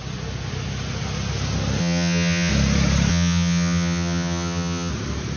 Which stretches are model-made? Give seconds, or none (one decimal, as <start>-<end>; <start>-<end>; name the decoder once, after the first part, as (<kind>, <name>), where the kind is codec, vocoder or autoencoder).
1.8-2.5 (vocoder, HiFi-GAN); 3.1-4.9